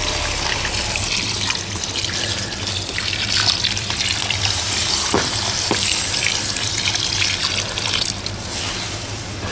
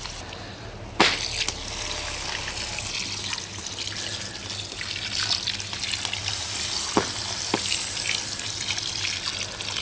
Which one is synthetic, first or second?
first